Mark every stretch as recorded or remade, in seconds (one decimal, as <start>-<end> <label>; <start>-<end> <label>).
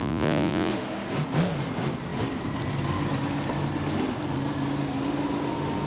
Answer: 0.0-0.7 remade; 0.7-5.9 recorded